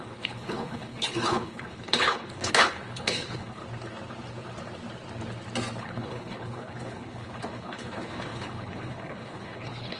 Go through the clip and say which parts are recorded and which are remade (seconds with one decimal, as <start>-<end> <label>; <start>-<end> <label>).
0.0-3.6 remade; 3.6-5.8 recorded; 5.8-10.0 remade